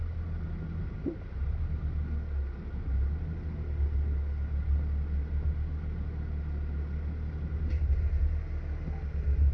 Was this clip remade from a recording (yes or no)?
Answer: no